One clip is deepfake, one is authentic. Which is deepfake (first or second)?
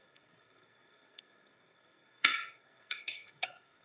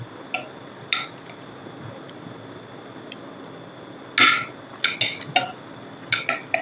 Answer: first